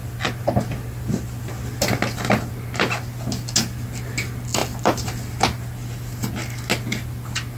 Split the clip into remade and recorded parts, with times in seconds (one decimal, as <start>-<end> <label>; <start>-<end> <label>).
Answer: 0.0-7.6 recorded